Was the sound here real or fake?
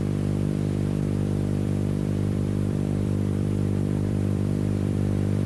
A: fake